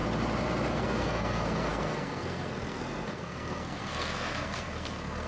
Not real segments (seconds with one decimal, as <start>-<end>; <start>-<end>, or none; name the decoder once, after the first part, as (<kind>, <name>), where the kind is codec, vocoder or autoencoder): 0.7-5.3 (codec, SNAC)